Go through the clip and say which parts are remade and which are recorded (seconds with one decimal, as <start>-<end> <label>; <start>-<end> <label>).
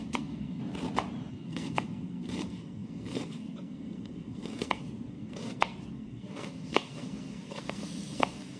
0.0-0.6 remade; 0.6-1.3 recorded; 1.3-8.6 remade